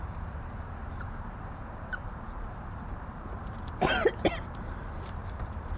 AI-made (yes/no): yes